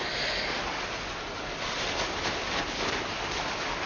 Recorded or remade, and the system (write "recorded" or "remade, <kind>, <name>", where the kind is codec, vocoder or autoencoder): recorded